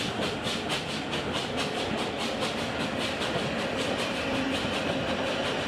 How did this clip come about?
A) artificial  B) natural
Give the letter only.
B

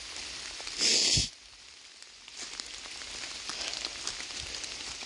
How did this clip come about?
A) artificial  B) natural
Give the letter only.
B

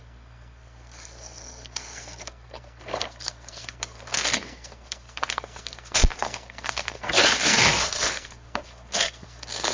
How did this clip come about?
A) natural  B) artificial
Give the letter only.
B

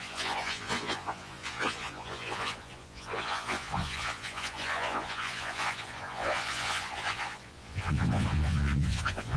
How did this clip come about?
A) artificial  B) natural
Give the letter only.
A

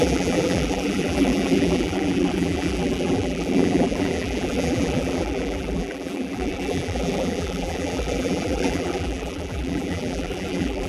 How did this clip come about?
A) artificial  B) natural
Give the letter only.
A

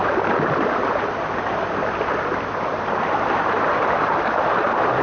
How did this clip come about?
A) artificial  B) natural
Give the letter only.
B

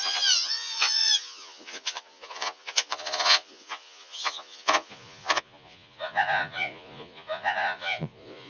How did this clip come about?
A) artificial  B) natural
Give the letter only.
A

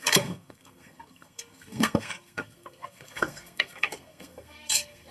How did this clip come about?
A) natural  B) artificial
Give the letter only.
B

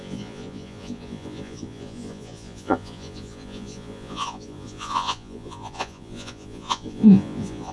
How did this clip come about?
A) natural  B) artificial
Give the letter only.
B